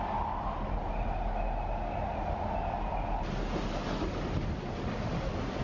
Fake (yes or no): no